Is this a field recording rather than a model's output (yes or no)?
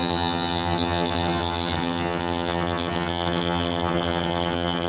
no